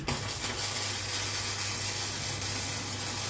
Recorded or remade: recorded